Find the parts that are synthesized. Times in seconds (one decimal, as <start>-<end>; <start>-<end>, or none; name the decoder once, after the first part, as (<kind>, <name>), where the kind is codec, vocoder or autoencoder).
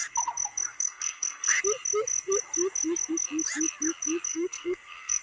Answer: 0.7-1.6 (codec, SNAC); 4.3-5.2